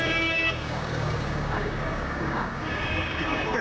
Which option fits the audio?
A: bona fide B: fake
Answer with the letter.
B